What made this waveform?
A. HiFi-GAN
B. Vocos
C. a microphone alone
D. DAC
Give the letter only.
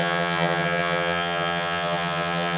A